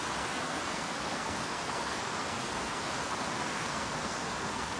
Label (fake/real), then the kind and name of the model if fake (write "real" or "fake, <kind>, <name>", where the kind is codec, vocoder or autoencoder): fake, codec, SNAC